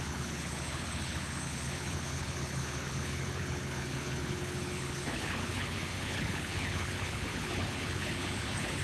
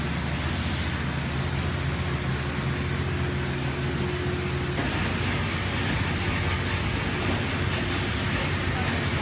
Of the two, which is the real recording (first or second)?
second